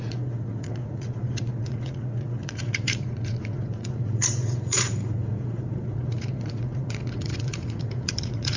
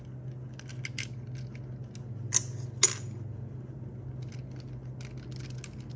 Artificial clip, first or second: first